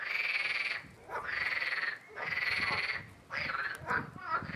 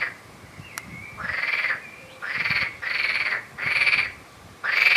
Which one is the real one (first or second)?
first